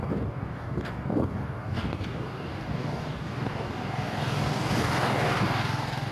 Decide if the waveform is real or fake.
fake